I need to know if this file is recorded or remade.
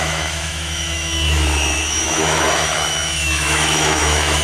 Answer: remade